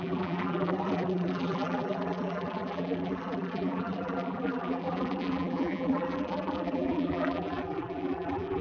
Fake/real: fake